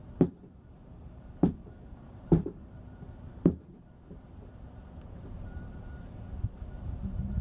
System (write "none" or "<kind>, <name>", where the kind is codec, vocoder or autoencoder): vocoder, BigVGAN v2